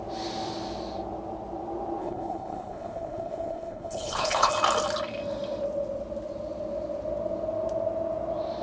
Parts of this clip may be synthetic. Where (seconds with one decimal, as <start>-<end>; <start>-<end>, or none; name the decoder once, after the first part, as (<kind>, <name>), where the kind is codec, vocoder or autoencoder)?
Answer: 2.0-4.5 (codec, HILCodec)